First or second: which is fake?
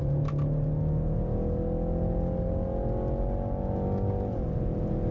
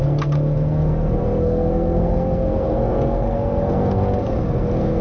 second